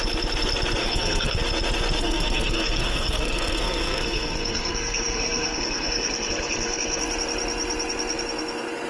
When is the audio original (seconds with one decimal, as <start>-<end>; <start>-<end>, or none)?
0.0-0.8; 1.4-2.0; 7.0-8.9